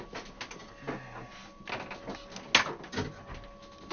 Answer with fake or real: real